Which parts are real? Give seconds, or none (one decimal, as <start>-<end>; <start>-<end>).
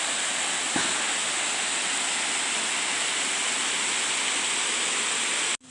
0.0-5.7